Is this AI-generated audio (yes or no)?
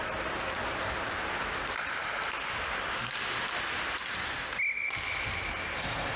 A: no